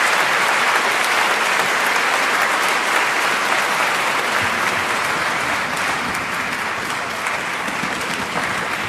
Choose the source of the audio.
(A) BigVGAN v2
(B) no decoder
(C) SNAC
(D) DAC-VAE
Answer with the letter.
B